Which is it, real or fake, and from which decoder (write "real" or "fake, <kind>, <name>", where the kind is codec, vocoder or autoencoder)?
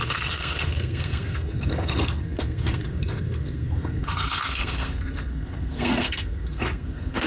fake, codec, SNAC